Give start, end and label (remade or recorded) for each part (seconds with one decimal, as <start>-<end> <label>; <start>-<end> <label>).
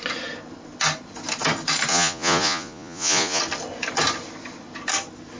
0.0-1.9 recorded; 1.9-3.4 remade; 3.4-5.4 recorded